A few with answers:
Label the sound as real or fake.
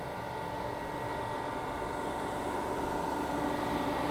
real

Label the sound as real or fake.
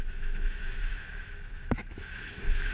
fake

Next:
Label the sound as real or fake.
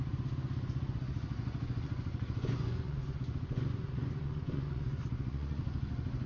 fake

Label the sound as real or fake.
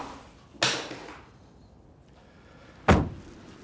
real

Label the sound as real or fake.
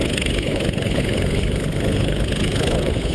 fake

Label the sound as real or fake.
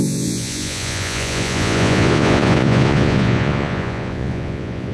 fake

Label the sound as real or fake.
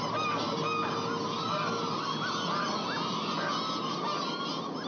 real